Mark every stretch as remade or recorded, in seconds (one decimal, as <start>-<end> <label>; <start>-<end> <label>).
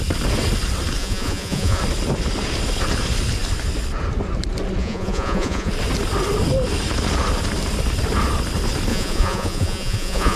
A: 0.0-1.0 recorded; 1.0-1.8 remade; 1.8-4.8 recorded; 4.8-5.7 remade; 5.7-8.9 recorded; 8.9-10.4 remade